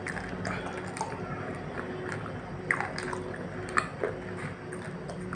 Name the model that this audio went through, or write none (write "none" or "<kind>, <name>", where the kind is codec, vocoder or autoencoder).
none